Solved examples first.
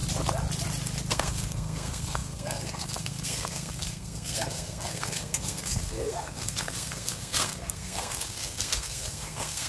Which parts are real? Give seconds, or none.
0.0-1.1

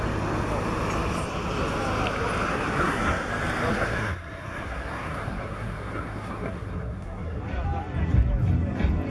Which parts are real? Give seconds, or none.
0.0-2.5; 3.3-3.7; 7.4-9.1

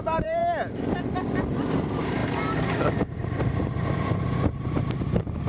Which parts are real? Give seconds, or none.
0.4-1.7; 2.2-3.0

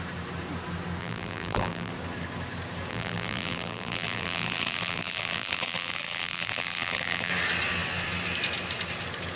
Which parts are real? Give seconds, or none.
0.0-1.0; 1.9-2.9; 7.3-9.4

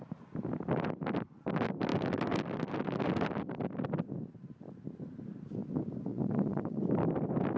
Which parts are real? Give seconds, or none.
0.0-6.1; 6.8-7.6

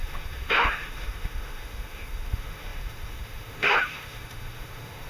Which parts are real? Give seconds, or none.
none